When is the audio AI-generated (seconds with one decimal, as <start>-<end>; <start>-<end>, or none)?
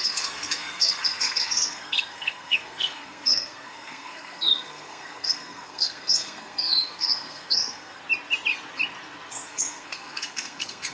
0.0-8.0; 9.3-10.9